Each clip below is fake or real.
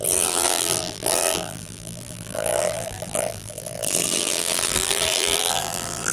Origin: fake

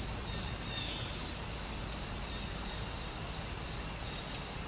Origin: real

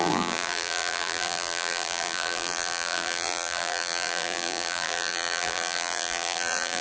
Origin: fake